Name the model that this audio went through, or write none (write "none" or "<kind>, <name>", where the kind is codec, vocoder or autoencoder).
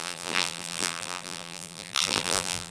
vocoder, BigVGAN v2